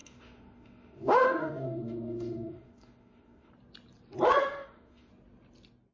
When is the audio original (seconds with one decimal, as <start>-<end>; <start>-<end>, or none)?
3.5-4.4; 5.1-5.9